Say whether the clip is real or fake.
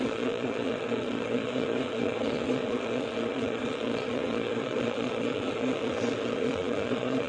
fake